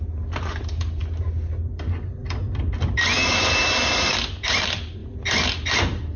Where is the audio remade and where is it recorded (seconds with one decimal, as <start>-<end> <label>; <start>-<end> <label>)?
0.0-6.2 recorded

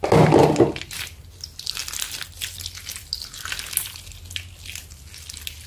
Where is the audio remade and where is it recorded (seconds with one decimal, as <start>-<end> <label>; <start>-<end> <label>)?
0.0-5.7 recorded

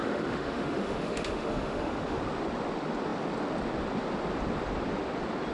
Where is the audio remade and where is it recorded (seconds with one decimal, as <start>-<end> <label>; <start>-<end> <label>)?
0.0-2.2 remade; 2.2-5.5 recorded

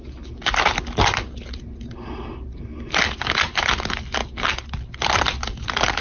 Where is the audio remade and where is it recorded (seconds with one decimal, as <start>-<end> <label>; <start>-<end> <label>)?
0.0-6.0 recorded